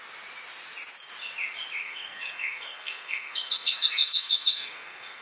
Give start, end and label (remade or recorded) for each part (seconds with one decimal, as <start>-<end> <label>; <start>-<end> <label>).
0.0-1.8 recorded; 1.8-5.2 remade